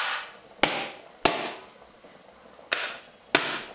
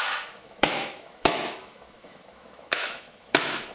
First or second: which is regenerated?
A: second